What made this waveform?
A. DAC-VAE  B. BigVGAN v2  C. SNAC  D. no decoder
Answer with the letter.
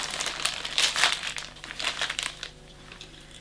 B